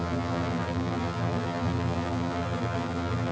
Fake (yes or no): yes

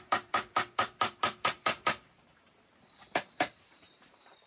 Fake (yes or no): yes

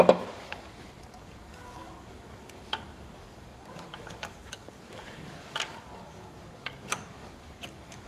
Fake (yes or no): yes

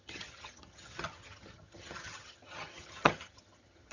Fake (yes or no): yes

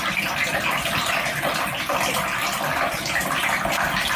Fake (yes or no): no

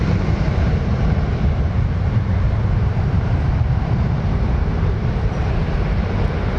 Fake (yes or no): yes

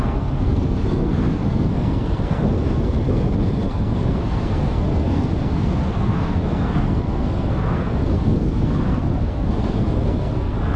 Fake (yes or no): yes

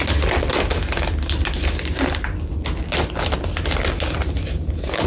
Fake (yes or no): no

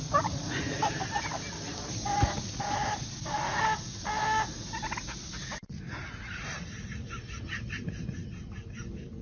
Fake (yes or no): no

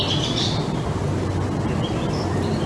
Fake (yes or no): no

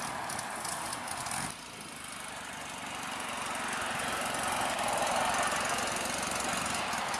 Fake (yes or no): no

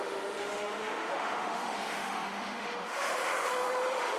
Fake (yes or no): yes